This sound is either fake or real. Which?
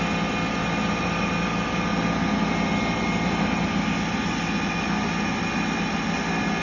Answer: real